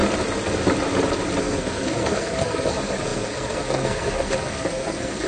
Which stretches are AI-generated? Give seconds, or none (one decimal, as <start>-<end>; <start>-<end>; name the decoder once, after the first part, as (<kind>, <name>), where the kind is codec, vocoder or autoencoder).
1.4-5.3 (codec, SNAC)